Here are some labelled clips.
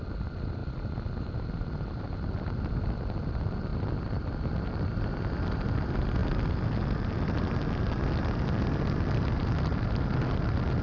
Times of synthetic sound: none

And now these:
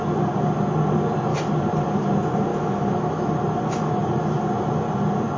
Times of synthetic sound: 2.5-3.3 (autoencoder, DAC-VAE)